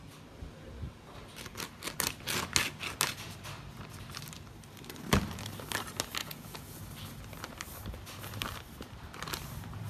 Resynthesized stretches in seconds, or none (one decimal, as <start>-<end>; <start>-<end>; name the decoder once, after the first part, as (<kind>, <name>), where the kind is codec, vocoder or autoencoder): 6.2-6.8 (vocoder, Vocos)